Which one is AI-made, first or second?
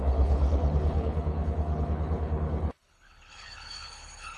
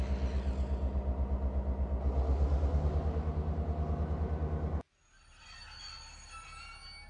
first